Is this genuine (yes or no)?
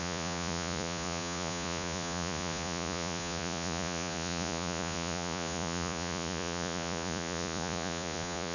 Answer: no